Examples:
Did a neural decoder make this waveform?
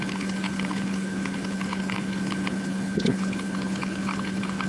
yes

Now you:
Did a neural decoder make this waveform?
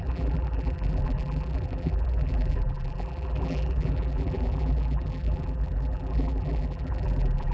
yes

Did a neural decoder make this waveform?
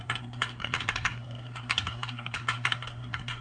yes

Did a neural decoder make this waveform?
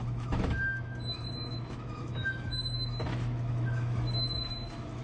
yes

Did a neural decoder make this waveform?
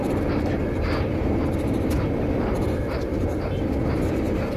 no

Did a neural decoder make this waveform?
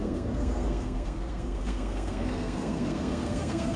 yes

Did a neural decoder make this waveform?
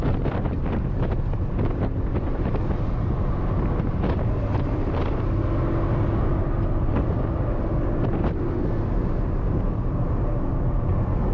no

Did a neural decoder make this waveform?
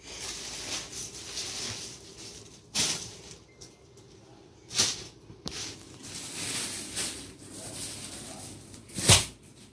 no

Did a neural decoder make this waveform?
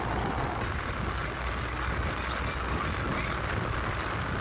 no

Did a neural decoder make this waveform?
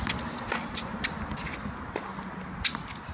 no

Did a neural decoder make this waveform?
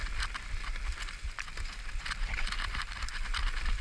no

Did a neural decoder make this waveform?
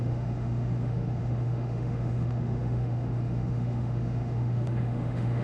yes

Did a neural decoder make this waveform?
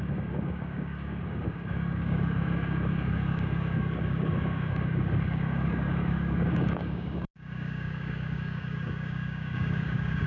yes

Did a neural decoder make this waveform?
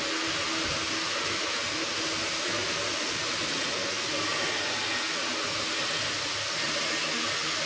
no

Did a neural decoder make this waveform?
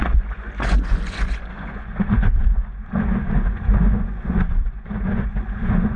yes